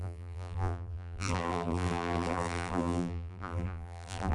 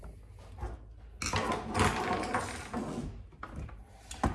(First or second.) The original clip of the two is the second